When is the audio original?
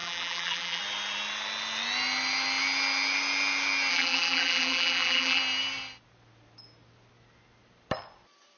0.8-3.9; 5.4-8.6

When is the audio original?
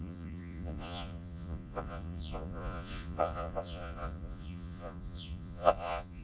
none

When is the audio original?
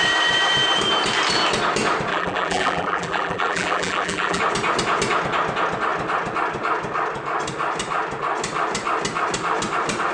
0.0-2.1; 4.4-10.1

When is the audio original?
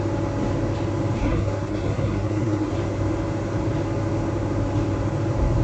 0.0-1.2; 2.7-5.6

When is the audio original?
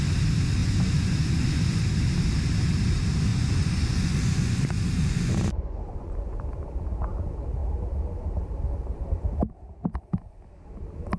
0.0-0.6; 1.8-3.3; 6.4-11.2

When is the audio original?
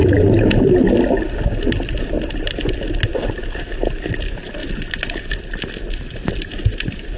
0.0-7.2